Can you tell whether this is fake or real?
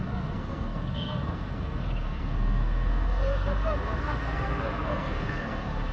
fake